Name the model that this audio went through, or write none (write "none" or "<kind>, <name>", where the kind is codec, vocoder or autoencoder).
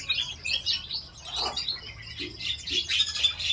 none